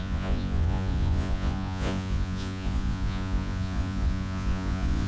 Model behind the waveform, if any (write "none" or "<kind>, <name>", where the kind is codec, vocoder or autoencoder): vocoder, Vocos